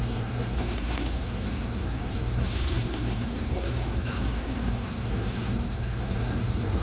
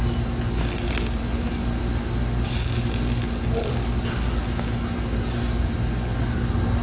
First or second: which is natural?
second